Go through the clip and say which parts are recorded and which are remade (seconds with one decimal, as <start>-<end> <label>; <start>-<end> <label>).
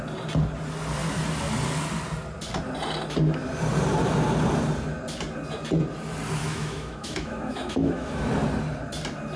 0.0-6.4 recorded; 6.4-8.3 remade; 8.3-9.4 recorded